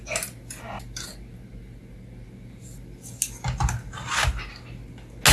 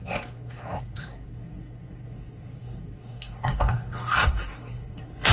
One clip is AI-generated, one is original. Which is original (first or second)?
first